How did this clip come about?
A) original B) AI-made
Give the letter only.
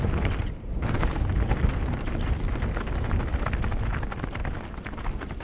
A